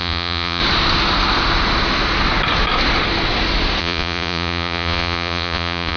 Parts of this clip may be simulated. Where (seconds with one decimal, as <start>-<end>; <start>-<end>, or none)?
0.0-0.6; 3.8-6.0